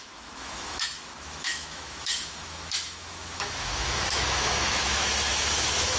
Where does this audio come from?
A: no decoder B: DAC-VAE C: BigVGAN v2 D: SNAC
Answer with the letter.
B